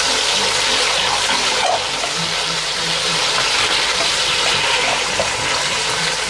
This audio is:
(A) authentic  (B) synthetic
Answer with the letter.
B